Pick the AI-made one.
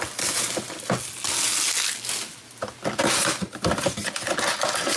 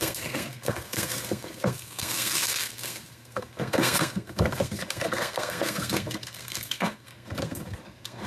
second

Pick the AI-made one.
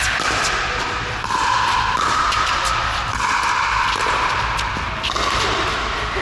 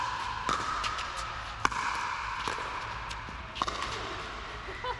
first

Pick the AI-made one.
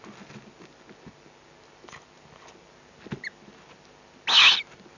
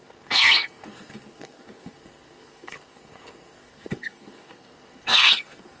second